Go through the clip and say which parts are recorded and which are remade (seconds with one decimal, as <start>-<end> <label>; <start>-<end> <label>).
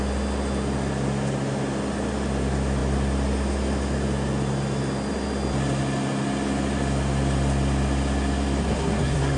0.0-8.6 recorded; 8.6-9.4 remade